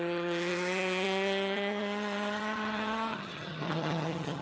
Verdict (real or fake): fake